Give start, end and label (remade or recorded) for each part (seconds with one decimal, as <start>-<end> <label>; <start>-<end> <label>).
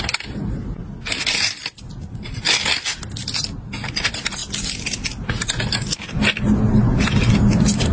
0.0-7.9 recorded